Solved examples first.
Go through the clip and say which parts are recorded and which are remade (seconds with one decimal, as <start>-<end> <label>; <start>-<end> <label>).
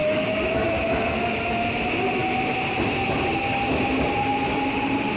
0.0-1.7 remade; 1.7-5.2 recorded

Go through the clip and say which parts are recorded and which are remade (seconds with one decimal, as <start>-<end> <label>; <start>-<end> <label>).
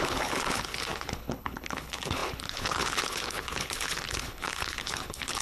0.0-5.4 remade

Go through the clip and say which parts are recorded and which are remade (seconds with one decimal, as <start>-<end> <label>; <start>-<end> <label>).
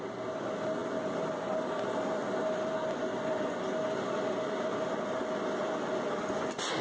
0.0-6.8 recorded